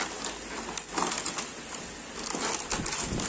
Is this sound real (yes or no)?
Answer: yes